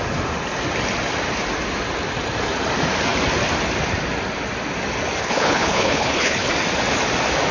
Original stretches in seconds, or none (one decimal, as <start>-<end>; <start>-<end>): 0.0-5.2; 6.5-7.5